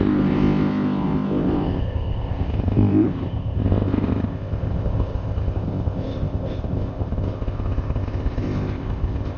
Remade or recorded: remade